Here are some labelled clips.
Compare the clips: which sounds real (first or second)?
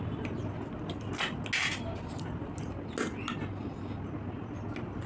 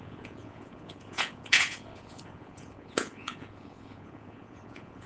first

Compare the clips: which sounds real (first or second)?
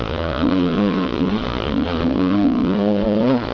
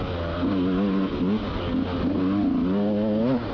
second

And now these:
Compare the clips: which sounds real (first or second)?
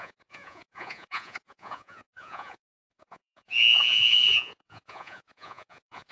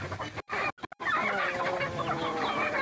second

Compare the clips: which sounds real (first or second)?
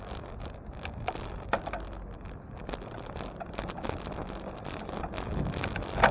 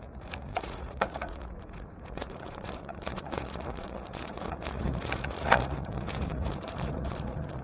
first